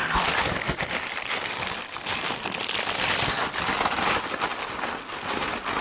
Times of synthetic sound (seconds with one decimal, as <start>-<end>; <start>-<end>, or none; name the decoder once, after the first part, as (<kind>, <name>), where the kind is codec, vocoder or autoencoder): none

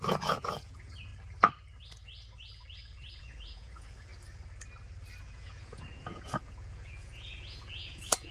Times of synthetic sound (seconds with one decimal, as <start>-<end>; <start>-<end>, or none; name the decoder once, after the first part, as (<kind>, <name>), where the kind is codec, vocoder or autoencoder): 0.0-1.1 (vocoder, Vocos); 3.2-4.1; 5.2-8.3